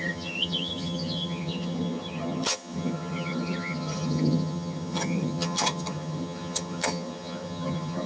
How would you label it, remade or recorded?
remade